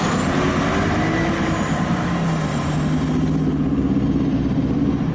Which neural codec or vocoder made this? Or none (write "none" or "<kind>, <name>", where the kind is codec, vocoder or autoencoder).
none